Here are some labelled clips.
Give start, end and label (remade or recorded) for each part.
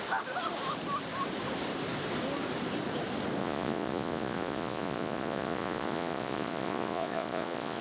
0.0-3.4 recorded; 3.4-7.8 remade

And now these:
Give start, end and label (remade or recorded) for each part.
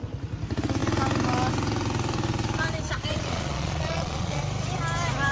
0.0-3.1 recorded; 3.1-4.4 remade; 4.4-5.3 recorded